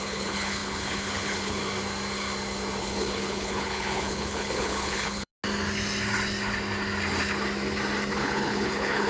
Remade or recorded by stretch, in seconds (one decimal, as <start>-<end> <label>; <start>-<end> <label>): 0.0-1.6 remade; 1.6-2.8 recorded; 2.8-5.3 remade; 5.3-8.1 recorded; 8.1-9.1 remade